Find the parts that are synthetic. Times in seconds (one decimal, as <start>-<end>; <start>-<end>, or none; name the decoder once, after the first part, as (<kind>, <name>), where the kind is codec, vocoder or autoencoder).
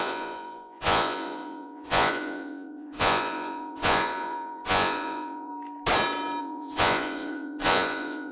0.0-5.5 (vocoder, Vocos); 6.4-8.3